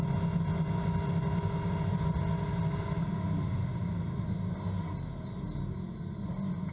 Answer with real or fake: real